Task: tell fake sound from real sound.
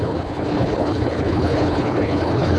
fake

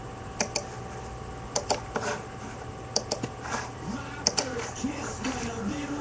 real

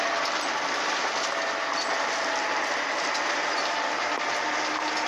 real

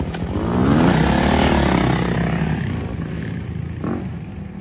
real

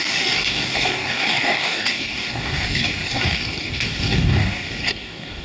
fake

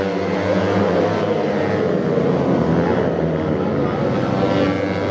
real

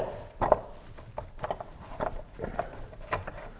real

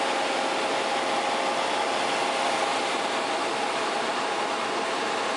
real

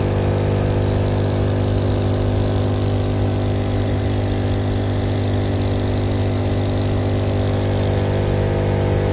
real